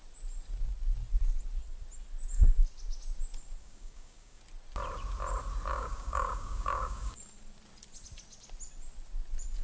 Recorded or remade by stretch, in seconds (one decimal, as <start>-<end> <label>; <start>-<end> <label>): 0.0-3.6 recorded; 3.6-4.4 remade; 4.4-5.7 recorded; 5.7-7.2 remade; 7.2-9.6 recorded